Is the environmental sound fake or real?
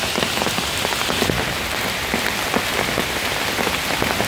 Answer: real